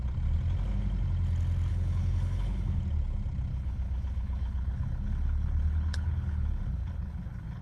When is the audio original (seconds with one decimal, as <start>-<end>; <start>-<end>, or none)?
0.0-1.7; 2.8-3.5